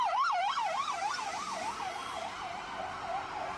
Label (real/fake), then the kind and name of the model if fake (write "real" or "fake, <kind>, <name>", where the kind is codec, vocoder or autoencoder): real